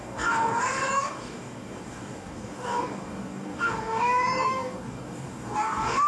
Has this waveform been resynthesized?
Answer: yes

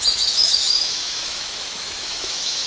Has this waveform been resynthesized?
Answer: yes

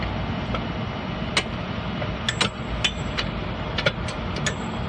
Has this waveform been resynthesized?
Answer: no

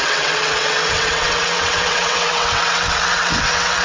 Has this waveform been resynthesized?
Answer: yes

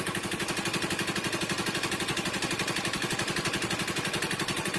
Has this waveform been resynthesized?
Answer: no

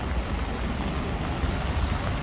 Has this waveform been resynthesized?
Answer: no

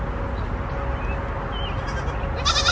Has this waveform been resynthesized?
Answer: no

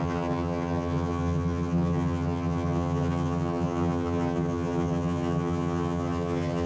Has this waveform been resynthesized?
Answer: yes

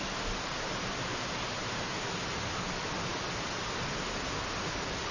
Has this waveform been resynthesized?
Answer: no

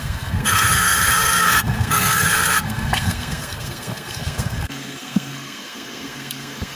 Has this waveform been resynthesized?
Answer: yes